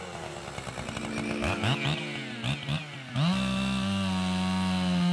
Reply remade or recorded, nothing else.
recorded